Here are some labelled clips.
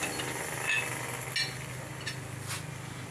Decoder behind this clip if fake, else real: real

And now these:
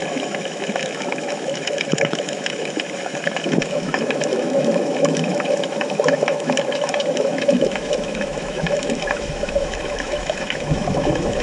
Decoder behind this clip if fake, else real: fake, autoencoder, DAC-VAE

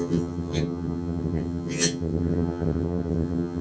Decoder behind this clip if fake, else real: fake, vocoder, HiFi-GAN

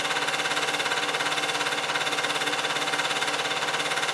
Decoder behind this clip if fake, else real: real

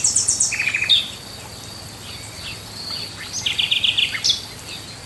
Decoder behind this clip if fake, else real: real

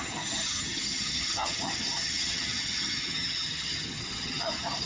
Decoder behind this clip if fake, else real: fake, vocoder, HiFi-GAN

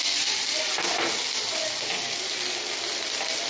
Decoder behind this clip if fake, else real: real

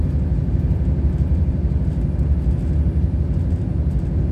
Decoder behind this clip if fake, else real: real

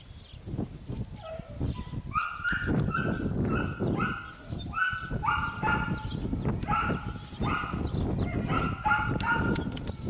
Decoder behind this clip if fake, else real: real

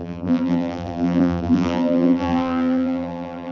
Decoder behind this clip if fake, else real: fake, vocoder, BigVGAN v2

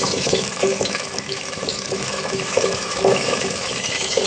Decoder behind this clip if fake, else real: fake, autoencoder, DAC-VAE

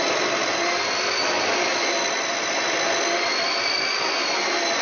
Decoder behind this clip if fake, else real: real